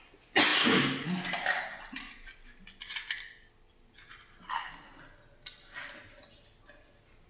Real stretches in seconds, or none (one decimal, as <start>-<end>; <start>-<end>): 0.0-7.3